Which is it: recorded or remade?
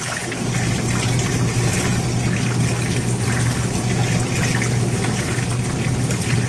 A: recorded